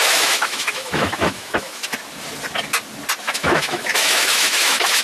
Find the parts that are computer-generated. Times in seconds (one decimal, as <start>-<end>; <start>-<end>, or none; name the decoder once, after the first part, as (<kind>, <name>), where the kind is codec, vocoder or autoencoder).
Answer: 0.0-1.8 (autoencoder, DAC-VAE); 3.2-5.0

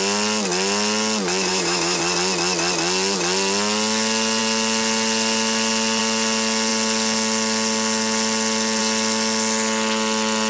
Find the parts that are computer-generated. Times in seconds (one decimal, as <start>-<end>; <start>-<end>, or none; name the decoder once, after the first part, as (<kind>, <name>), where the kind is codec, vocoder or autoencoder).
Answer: 1.5-2.0 (autoencoder, DAC-VAE)

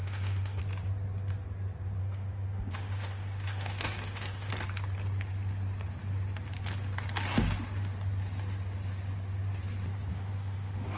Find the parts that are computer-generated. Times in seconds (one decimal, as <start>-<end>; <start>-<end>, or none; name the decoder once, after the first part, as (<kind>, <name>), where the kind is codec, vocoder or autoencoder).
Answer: 0.0-0.6 (autoencoder, DAC-VAE); 2.0-4.5; 10.1-11.0

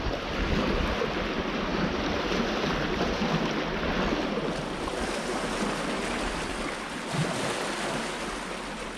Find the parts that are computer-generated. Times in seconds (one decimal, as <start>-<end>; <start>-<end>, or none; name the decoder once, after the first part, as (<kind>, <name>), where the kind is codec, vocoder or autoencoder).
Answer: none

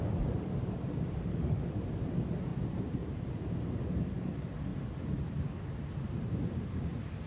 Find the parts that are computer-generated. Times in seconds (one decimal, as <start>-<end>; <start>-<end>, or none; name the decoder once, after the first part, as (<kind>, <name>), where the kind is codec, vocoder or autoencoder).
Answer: 1.3-1.8 (autoencoder, DAC-VAE)

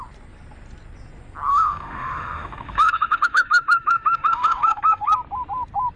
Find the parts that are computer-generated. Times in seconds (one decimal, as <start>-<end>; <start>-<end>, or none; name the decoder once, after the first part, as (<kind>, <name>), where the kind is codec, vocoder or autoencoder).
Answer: 1.5-5.1 (autoencoder, DAC-VAE)

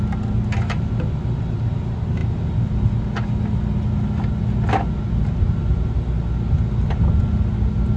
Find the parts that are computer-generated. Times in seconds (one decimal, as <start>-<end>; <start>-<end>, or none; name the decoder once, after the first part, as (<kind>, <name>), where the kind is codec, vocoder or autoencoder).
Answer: none